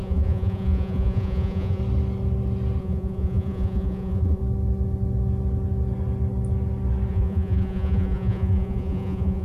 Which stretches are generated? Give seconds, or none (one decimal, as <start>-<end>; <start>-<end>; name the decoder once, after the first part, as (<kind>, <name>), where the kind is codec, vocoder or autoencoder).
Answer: 0.0-1.8 (vocoder, Vocos); 2.8-4.4; 7.1-9.4

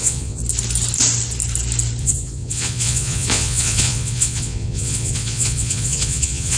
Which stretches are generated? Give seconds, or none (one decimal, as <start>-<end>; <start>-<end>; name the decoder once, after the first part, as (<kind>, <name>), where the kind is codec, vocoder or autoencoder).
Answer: 0.0-0.4 (vocoder, Vocos); 2.0-6.6

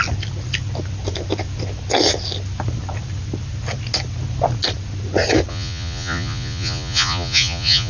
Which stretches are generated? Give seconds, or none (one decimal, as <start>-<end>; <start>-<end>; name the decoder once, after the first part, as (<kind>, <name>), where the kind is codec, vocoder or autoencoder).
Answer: 5.5-7.9 (vocoder, Vocos)